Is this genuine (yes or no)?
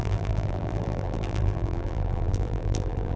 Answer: no